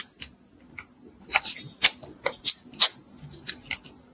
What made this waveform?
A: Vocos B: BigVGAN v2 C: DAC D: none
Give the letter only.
D